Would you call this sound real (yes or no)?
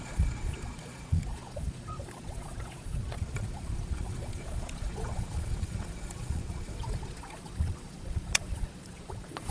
no